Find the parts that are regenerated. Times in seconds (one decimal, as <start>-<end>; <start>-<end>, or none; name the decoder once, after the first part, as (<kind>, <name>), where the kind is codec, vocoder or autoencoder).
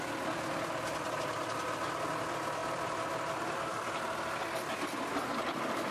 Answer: 2.6-3.1 (vocoder, BigVGAN v2); 3.7-4.4